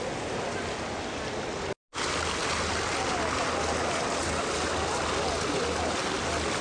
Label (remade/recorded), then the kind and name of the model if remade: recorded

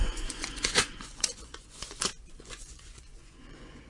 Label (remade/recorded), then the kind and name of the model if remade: remade, vocoder, Vocos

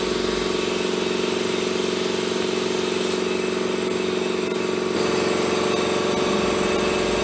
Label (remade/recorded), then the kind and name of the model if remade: recorded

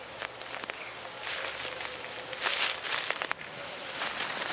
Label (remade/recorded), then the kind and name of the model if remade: recorded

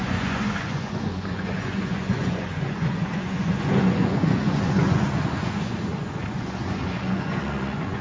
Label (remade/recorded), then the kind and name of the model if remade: remade, vocoder, Vocos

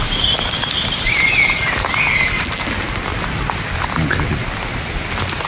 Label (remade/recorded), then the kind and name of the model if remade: recorded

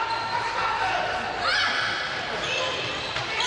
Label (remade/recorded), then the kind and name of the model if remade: recorded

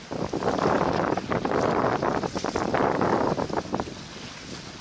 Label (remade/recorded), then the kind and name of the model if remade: recorded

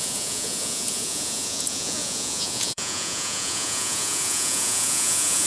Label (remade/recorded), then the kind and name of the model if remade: remade, vocoder, Vocos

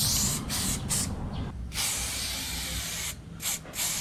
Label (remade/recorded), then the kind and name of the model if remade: recorded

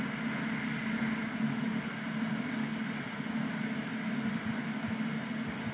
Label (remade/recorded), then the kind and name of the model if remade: recorded